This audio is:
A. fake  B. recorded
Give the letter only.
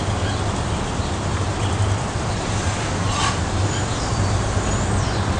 B